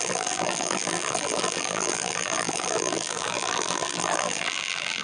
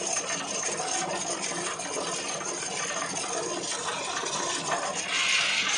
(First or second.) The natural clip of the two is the second